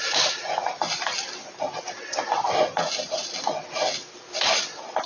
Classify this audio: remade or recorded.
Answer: recorded